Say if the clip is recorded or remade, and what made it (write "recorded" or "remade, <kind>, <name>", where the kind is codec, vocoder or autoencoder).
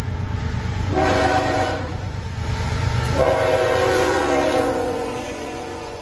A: remade, vocoder, Vocos